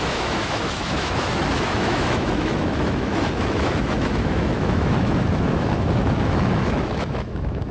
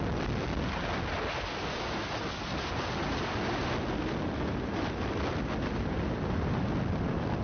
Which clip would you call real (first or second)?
second